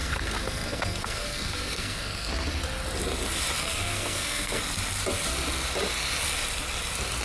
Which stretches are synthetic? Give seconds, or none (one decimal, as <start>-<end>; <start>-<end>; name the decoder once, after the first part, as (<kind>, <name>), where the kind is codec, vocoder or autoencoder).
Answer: 0.0-2.3 (codec, SNAC); 3.6-4.6